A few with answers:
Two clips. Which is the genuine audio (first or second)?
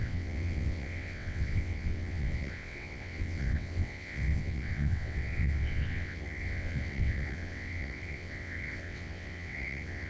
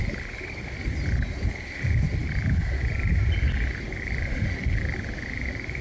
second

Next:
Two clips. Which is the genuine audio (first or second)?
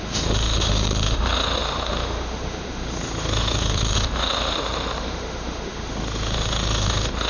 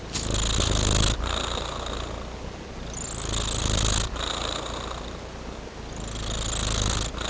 second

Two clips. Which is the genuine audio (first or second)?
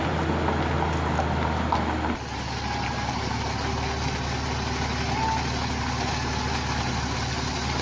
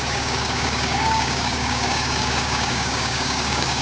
first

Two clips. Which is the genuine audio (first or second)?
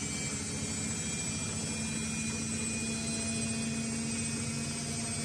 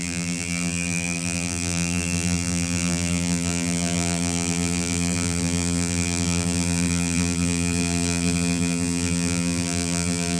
first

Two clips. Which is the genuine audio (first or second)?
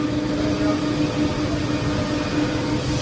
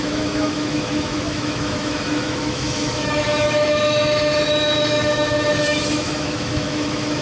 first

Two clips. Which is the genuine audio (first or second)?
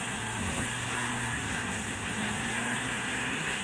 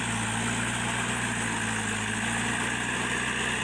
second